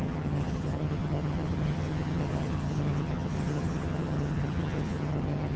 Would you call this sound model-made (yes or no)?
yes